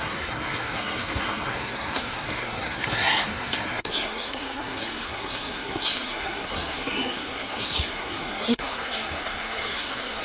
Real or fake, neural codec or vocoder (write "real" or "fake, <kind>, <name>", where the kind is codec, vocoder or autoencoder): fake, codec, SNAC